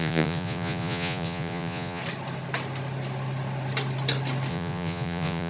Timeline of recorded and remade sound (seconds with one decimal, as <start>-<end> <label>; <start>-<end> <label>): 0.0-2.0 remade; 2.0-4.5 recorded; 4.5-5.5 remade